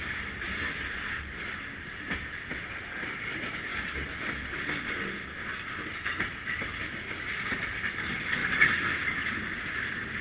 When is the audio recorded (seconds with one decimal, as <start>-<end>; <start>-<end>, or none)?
0.0-10.2